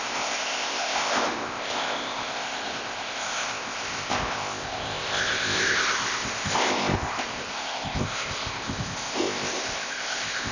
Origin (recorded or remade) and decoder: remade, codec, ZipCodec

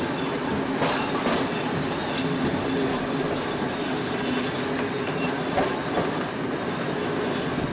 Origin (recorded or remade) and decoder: recorded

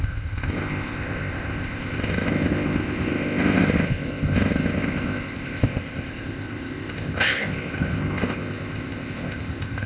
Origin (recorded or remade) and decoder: remade, codec, ZipCodec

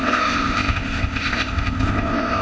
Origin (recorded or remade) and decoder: remade, codec, ZipCodec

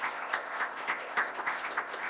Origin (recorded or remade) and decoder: remade, codec, ZipCodec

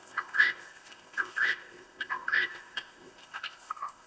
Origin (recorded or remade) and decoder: remade, codec, ZipCodec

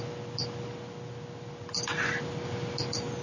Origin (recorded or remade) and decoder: recorded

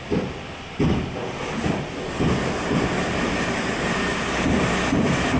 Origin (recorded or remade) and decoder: recorded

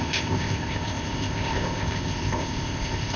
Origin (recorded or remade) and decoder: remade, codec, ZipCodec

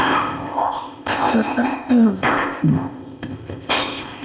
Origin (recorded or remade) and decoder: remade, codec, ZipCodec